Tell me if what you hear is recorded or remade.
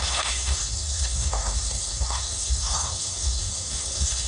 remade